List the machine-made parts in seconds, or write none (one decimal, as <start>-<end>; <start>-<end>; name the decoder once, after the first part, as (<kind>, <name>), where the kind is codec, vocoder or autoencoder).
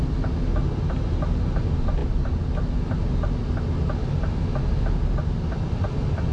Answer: none